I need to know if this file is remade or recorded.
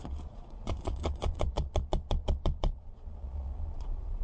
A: remade